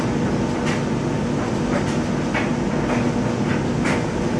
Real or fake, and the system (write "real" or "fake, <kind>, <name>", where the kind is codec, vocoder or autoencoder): real